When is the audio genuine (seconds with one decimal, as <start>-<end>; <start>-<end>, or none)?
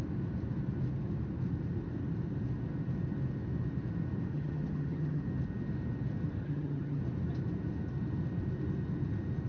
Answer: 0.0-4.3; 5.2-6.4; 7.0-9.5